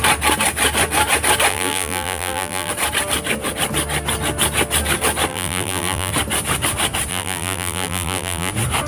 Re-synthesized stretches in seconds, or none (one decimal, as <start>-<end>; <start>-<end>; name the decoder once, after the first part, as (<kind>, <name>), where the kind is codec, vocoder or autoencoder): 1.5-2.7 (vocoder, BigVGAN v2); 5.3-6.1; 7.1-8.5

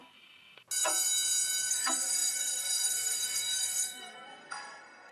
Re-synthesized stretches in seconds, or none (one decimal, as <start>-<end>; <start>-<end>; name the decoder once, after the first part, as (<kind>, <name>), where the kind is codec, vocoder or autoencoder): 1.7-5.1 (codec, SNAC)

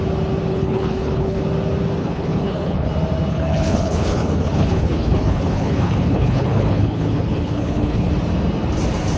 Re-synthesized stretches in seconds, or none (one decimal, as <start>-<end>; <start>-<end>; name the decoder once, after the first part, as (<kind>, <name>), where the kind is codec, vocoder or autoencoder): 0.5-1.4 (codec, HILCodec); 2.0-2.9; 3.3-8.1